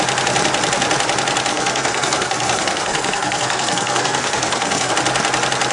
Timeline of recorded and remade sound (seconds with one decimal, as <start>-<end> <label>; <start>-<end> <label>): 0.0-1.5 recorded; 1.5-4.9 remade; 4.9-5.7 recorded